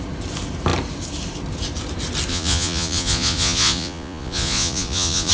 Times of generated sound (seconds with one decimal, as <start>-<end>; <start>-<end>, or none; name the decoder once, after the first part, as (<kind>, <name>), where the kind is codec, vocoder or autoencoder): 2.3-5.3 (vocoder, Vocos)